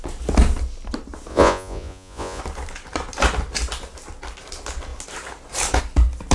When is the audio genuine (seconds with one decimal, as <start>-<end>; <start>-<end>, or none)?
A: 0.0-1.3; 2.4-6.3

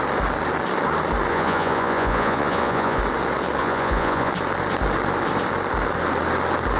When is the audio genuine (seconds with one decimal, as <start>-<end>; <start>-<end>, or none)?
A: 0.0-1.3; 3.0-3.6; 4.3-6.8

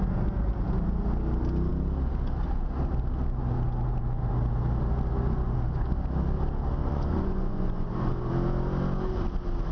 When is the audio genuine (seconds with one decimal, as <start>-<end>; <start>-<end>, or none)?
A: 0.0-6.8; 8.3-9.7

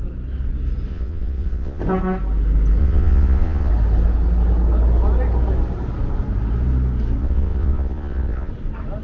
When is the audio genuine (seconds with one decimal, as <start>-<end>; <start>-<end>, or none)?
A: 0.0-0.9; 1.8-2.8; 3.7-7.2; 8.5-9.0